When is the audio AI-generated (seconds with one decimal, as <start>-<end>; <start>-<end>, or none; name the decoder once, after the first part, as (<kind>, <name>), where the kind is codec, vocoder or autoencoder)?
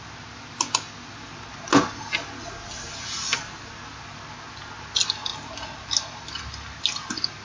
none